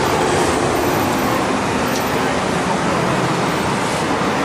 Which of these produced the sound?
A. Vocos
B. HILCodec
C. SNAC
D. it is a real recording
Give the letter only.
D